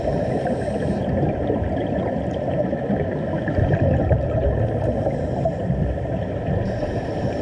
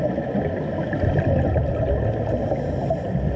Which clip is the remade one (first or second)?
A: first